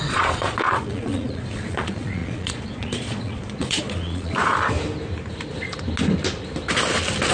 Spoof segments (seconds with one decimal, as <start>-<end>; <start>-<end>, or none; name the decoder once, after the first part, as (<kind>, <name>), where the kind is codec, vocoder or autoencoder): 0.0-4.4 (vocoder, Vocos)

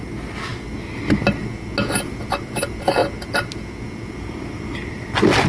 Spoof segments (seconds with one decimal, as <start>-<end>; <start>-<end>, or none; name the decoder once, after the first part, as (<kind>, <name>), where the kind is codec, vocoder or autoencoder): none

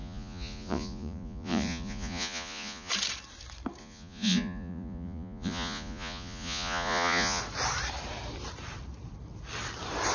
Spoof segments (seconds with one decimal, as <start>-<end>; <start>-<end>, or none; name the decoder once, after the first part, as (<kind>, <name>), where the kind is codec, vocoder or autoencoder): 0.0-2.9 (vocoder, Vocos); 3.8-7.4

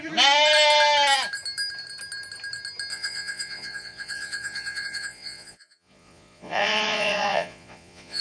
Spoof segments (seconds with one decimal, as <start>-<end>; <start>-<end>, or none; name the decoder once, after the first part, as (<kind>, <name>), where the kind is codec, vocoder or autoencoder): 2.9-8.2 (vocoder, Vocos)

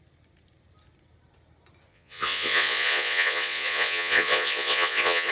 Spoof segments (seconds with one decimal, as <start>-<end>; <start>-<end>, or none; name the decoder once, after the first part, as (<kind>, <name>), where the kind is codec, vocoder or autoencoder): 1.9-5.3 (vocoder, Vocos)

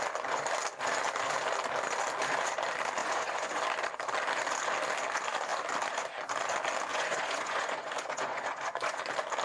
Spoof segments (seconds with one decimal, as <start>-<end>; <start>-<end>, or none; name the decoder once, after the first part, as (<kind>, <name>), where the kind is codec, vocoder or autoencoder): 3.0-3.6 (vocoder, Vocos); 6.9-9.0